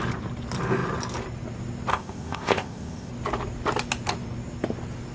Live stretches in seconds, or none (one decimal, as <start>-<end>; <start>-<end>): 0.0-1.9; 3.1-5.1